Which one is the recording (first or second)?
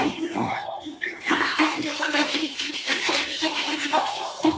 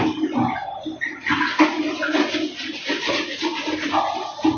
second